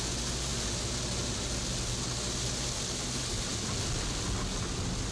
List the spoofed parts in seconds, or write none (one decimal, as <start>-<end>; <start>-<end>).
none